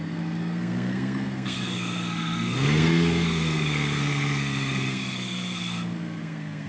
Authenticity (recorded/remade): remade